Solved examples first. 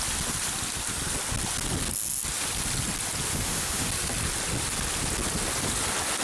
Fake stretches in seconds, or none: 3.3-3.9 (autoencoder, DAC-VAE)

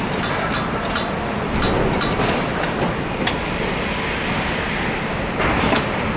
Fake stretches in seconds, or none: 0.0-6.2 (vocoder, BigVGAN v2)